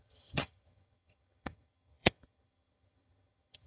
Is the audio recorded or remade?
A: remade